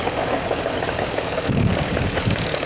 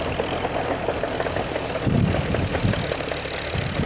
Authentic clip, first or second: second